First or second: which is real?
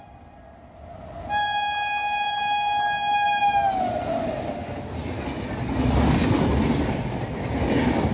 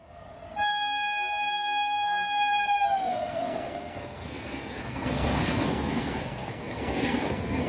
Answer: first